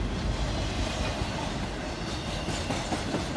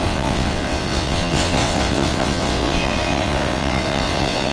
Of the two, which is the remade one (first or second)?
second